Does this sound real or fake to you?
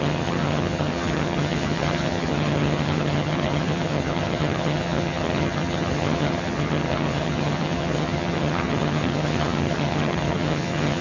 fake